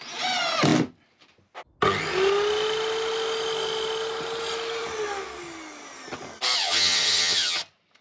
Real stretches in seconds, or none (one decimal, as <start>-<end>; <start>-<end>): 0.0-6.6; 7.6-8.0

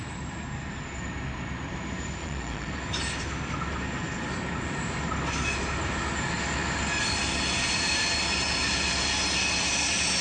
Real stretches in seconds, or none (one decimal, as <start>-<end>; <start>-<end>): 0.0-2.2; 2.7-10.2

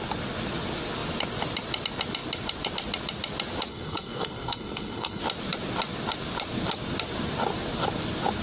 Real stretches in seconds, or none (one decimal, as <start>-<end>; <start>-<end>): 0.0-3.7; 5.2-8.4

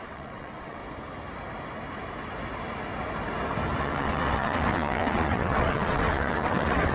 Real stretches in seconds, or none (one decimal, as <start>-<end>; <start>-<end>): 0.8-3.8

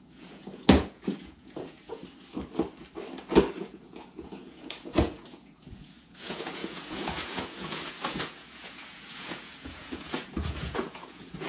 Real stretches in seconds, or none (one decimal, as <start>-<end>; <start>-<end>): 2.0-3.6

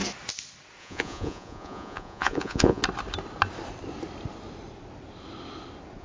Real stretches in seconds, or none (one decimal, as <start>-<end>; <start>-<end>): 0.0-0.8; 2.8-6.0